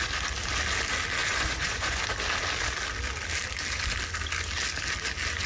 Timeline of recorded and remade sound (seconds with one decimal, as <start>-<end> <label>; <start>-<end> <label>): 0.0-1.2 recorded; 1.2-2.0 remade; 2.0-5.5 recorded